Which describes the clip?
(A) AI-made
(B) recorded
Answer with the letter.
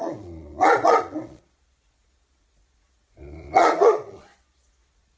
A